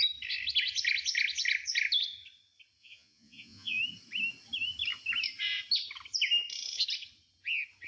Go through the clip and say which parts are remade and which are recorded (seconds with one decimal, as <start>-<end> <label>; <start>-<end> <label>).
0.0-2.8 recorded; 2.8-3.8 remade; 3.8-7.9 recorded

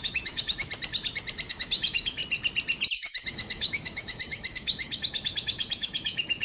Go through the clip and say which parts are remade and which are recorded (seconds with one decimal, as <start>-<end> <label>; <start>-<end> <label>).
0.0-0.7 remade; 0.7-1.5 recorded; 1.5-2.2 remade; 2.2-2.9 recorded; 2.9-6.4 remade

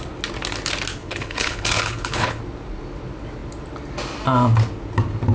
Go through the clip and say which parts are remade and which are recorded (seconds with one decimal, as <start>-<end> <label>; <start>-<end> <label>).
0.0-1.0 recorded; 1.0-2.4 remade; 2.4-5.3 recorded

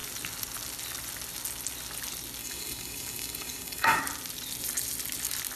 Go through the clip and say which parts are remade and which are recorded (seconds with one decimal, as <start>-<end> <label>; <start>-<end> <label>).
0.0-2.4 recorded; 2.4-4.0 remade; 4.0-5.6 recorded

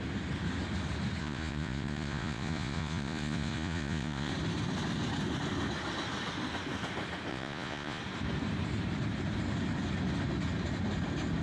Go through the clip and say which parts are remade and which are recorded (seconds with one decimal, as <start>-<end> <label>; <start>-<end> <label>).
0.0-1.2 recorded; 1.2-4.3 remade; 4.3-7.3 recorded; 7.3-8.0 remade; 8.0-11.4 recorded

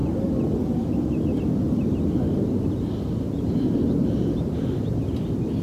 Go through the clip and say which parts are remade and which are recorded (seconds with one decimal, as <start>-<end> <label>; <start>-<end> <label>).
0.0-5.6 recorded

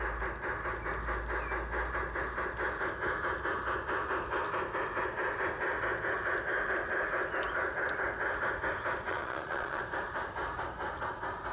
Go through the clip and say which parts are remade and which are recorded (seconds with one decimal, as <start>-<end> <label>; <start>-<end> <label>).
0.0-9.1 recorded; 9.1-9.8 remade; 9.8-11.5 recorded

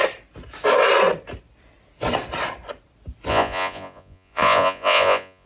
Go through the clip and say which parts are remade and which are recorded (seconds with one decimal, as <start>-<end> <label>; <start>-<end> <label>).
0.0-3.3 recorded; 3.3-5.5 remade